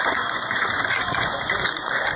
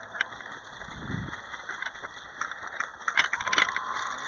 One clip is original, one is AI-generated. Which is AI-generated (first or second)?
first